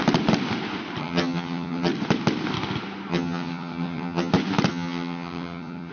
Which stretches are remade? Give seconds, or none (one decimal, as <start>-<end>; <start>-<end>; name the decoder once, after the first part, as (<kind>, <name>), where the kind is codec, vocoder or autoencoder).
1.0-1.9 (vocoder, HiFi-GAN); 3.1-4.3; 4.7-5.9